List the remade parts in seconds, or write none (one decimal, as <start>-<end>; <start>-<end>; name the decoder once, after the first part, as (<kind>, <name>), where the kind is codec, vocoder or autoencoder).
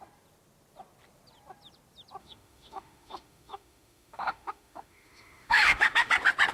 2.2-6.1 (autoencoder, DAC-VAE)